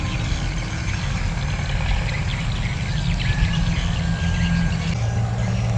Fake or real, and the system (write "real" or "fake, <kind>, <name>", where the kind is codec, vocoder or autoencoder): real